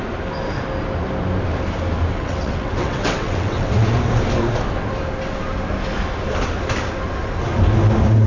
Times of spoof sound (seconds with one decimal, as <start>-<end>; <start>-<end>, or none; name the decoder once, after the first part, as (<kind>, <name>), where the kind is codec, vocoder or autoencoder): 2.1-3.7 (vocoder, WaveNeXt)